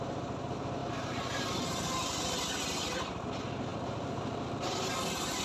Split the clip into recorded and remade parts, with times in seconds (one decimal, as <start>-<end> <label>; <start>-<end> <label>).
0.0-0.8 recorded; 0.8-1.4 remade; 1.4-3.7 recorded; 3.7-4.7 remade; 4.7-5.4 recorded